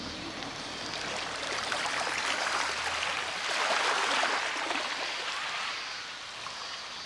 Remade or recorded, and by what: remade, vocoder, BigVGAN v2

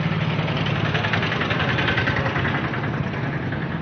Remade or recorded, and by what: recorded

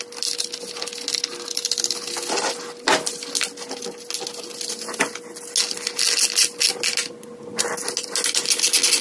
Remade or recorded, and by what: recorded